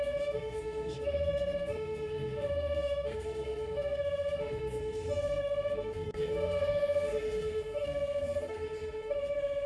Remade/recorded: remade